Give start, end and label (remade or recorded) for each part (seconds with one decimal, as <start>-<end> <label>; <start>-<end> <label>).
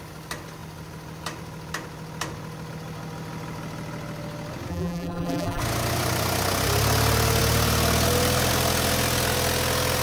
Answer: 0.0-4.7 recorded; 4.7-5.6 remade; 5.6-10.0 recorded